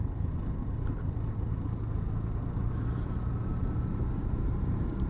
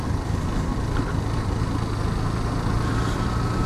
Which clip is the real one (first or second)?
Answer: second